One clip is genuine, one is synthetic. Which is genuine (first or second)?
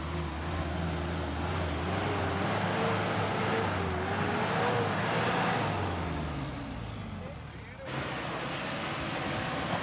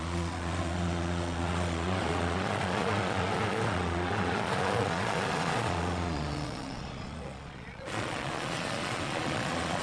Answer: first